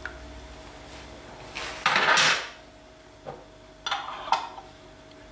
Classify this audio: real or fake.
real